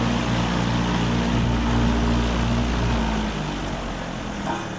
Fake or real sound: real